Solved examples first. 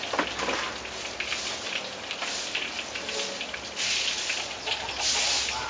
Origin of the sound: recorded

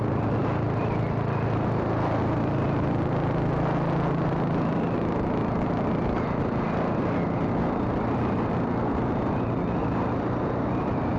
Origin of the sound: recorded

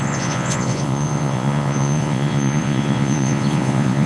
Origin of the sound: remade